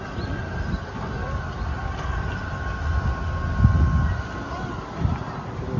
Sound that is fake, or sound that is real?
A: real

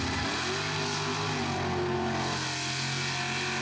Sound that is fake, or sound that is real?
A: real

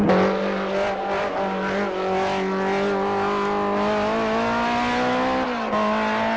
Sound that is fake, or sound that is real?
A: real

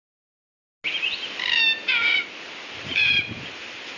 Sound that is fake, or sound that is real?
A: real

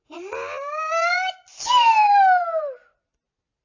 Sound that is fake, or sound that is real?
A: real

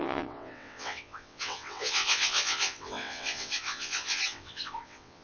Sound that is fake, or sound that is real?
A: fake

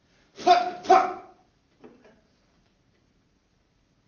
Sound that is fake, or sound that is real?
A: real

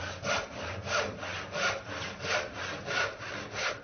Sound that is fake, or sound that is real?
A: real